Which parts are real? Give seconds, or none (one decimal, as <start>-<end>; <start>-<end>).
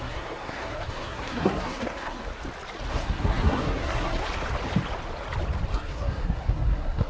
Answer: 2.3-2.9; 4.2-5.7